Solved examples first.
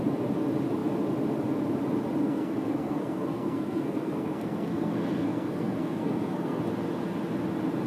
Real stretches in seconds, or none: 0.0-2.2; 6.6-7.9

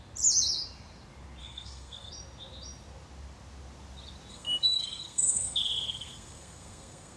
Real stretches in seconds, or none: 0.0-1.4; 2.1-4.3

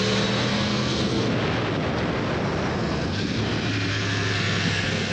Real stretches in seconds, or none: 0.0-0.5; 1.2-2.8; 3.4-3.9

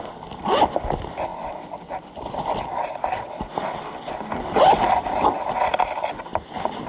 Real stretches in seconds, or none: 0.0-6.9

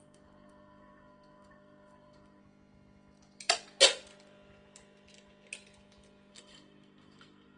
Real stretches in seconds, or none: 2.4-6.3

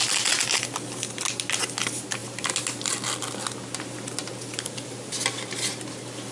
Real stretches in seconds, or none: 0.0-6.3

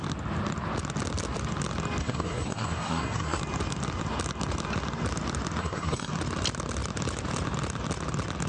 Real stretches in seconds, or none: 0.0-2.0; 3.4-5.6; 6.1-8.5

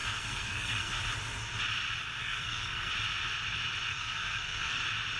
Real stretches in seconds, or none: 1.0-2.2; 2.9-3.9; 4.8-5.2